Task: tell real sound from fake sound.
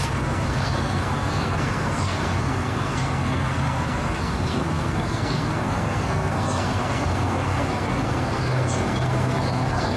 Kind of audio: fake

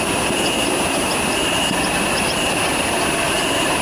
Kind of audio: real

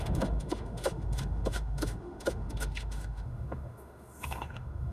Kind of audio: fake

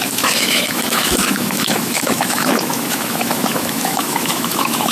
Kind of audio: fake